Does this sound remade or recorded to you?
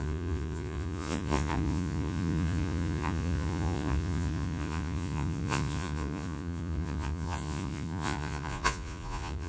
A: remade